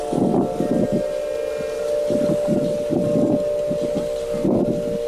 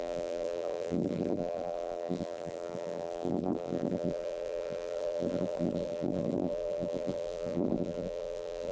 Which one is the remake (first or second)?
second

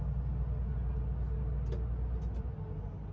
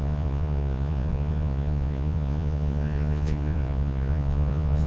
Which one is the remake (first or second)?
second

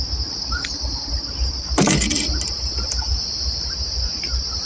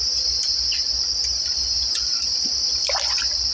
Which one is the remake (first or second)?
first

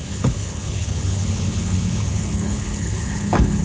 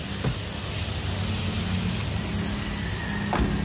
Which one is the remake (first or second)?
first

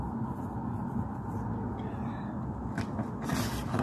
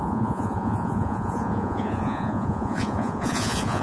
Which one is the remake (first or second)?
second